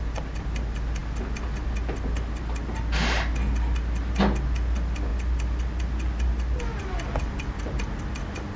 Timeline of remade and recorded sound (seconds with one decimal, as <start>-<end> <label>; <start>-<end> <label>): 0.0-8.6 recorded